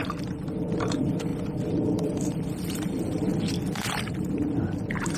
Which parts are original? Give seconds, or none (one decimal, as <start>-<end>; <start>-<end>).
1.3-1.9; 3.3-4.1